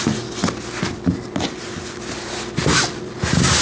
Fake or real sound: real